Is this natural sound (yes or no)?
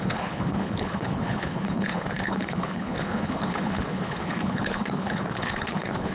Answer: no